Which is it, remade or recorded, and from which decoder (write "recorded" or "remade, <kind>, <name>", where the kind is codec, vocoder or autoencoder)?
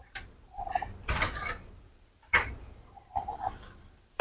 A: remade, vocoder, BigVGAN v2